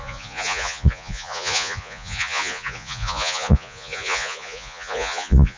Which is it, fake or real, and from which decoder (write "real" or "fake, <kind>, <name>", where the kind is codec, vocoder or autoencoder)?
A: fake, vocoder, Vocos